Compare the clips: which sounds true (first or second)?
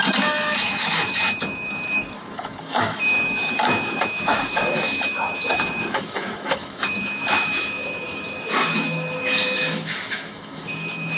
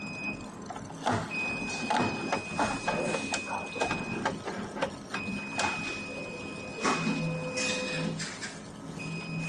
second